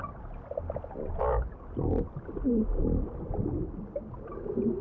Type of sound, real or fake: real